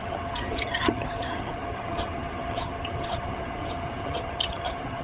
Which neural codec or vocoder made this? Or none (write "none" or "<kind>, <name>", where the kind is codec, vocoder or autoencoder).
vocoder, HiFi-GAN